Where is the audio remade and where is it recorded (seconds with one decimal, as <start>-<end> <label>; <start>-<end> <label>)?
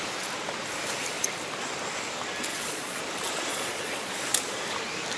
0.0-2.5 recorded; 2.5-3.0 remade; 3.0-3.5 recorded; 3.5-4.1 remade; 4.1-5.2 recorded